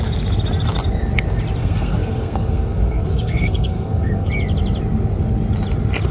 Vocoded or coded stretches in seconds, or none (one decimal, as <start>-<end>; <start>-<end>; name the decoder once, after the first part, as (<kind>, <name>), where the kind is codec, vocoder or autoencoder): 1.6-4.3 (codec, SNAC)